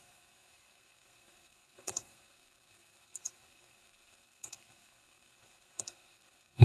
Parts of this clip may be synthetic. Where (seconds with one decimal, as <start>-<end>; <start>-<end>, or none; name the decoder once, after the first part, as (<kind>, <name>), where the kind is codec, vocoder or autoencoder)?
0.0-6.6 (codec, SNAC)